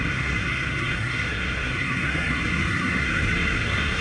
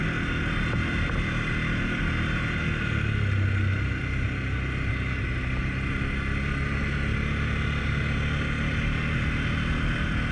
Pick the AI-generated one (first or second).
first